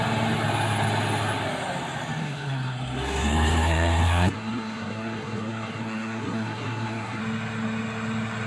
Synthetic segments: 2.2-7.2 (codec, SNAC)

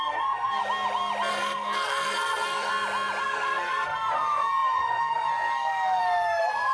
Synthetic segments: 0.0-0.6 (codec, SNAC); 1.3-2.7; 3.2-6.7

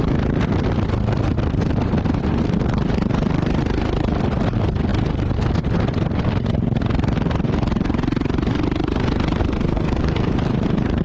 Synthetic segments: 9.4-10.3 (codec, SNAC)